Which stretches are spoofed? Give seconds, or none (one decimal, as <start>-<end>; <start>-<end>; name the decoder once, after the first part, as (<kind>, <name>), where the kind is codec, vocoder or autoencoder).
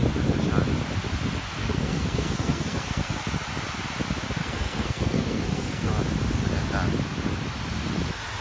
1.6-3.2 (codec, SNAC); 4.4-5.9